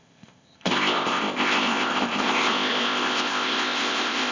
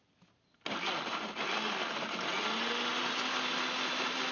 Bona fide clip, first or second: second